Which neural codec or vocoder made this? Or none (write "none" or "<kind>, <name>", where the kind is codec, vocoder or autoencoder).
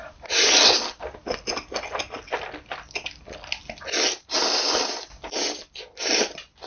none